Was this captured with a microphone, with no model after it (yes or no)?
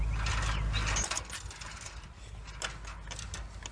yes